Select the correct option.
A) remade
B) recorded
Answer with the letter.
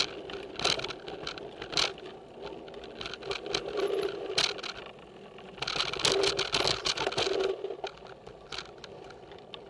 B